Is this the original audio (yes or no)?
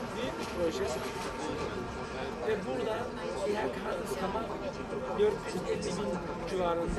yes